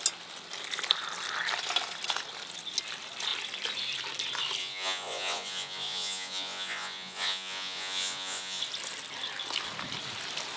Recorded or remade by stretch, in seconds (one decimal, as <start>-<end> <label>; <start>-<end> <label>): 0.0-4.6 recorded; 4.6-8.6 remade; 8.6-10.6 recorded